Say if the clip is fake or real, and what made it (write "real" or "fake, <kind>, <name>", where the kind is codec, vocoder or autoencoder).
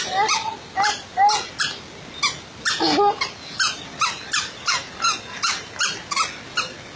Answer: real